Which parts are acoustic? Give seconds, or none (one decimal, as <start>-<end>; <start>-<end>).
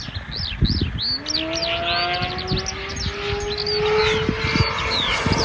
0.0-5.4